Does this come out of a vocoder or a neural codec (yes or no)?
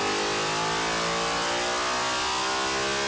no